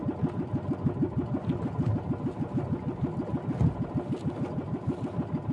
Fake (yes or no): no